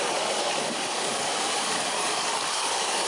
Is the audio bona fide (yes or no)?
no